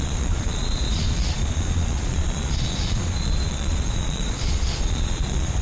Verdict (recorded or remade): remade